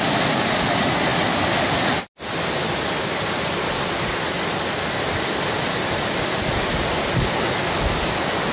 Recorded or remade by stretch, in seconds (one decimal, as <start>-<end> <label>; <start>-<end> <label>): 0.0-8.5 recorded